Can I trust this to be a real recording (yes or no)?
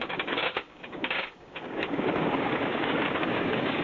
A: no